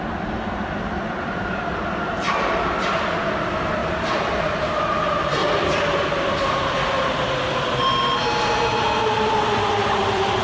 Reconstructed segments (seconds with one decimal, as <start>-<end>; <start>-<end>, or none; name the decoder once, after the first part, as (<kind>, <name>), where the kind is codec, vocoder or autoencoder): 3.8-4.6 (vocoder, BigVGAN v2); 5.4-10.4